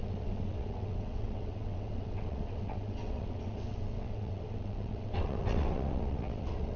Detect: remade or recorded remade